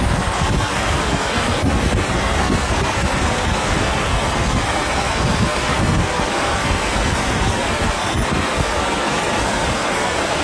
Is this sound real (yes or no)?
no